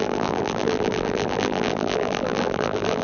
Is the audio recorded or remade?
remade